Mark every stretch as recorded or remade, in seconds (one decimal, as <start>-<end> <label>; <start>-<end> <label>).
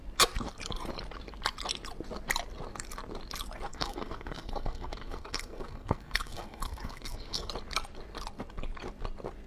0.0-3.7 recorded; 3.7-7.5 remade; 7.5-9.5 recorded